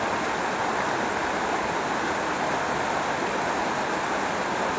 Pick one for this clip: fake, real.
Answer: real